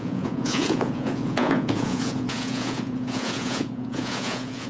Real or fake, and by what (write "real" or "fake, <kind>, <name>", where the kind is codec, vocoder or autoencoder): fake, vocoder, Vocos